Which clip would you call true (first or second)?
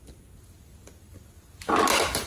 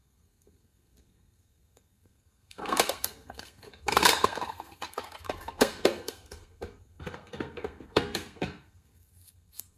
first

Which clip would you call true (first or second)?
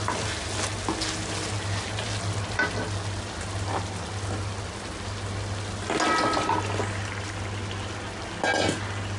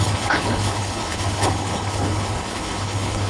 first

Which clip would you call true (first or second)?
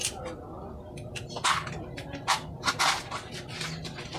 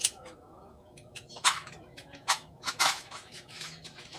first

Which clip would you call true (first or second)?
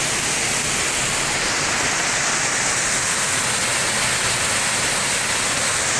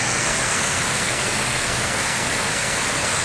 first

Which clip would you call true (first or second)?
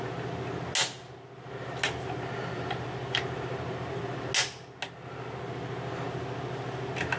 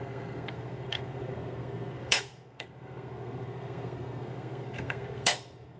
first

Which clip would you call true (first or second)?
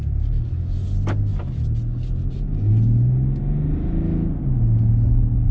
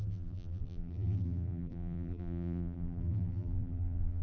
first